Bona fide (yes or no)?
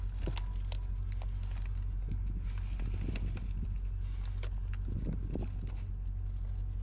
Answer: yes